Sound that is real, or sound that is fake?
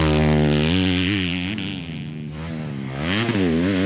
real